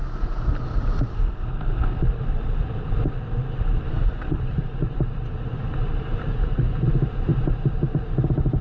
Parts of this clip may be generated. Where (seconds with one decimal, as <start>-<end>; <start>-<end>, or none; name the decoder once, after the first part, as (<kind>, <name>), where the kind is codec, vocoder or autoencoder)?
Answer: 0.0-0.5 (codec, SNAC); 1.1-2.0; 3.9-4.4